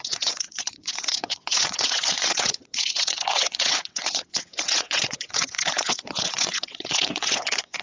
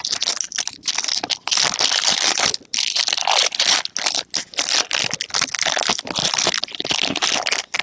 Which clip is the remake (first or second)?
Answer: first